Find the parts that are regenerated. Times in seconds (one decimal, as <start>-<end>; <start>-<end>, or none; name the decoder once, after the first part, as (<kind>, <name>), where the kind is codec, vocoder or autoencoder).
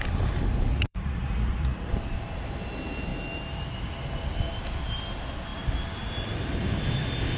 0.7-1.9 (vocoder, Vocos)